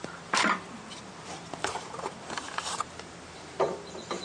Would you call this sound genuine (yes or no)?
no